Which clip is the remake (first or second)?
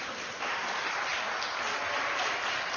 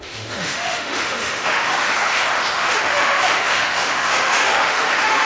second